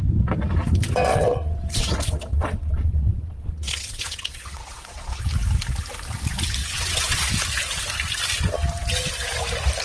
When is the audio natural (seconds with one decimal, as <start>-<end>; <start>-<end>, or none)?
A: 0.0-1.1; 5.2-6.6; 7.3-9.8